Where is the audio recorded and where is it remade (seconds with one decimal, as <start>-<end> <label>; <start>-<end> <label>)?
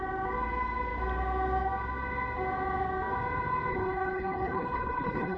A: 0.0-3.7 recorded; 3.7-5.4 remade